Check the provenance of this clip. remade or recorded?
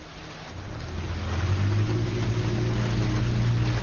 recorded